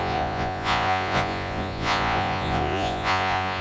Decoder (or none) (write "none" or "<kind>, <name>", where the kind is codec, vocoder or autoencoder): vocoder, Vocos